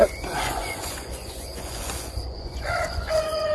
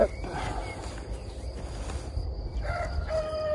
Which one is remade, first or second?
first